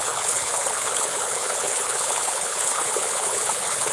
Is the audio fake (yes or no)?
yes